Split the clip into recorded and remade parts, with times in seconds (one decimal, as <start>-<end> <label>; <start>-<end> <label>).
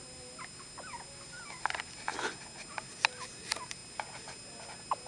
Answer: 0.0-5.1 recorded